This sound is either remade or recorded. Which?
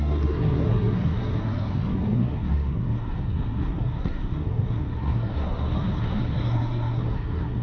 remade